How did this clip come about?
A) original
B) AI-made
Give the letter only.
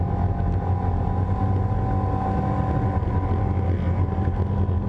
A